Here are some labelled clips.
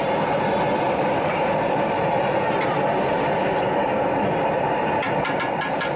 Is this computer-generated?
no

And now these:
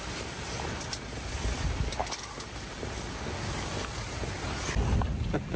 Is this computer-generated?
no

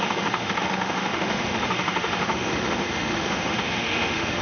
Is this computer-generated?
yes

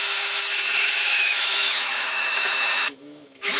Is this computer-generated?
yes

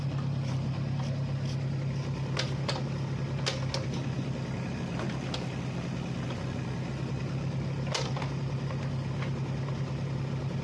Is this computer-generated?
no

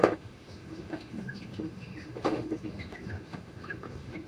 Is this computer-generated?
yes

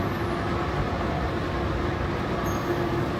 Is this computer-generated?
no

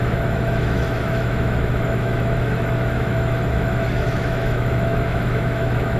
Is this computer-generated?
yes